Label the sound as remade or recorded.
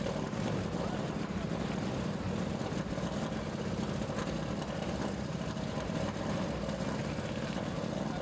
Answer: recorded